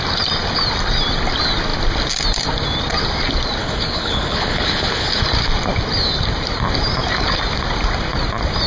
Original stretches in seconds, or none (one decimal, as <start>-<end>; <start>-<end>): 0.0-3.6; 5.2-8.7